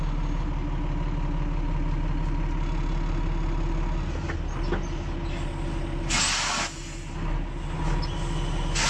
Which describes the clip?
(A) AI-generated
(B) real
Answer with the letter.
B